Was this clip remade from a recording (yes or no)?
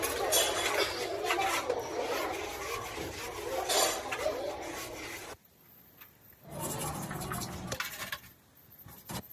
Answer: no